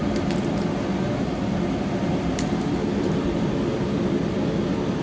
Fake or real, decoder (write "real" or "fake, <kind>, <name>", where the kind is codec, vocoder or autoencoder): real